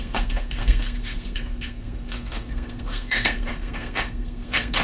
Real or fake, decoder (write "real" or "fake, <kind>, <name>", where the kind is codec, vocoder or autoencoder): fake, codec, SNAC